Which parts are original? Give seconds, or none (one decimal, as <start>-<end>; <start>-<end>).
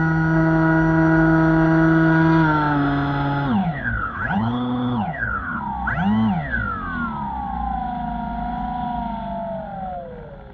0.0-3.6; 5.6-10.5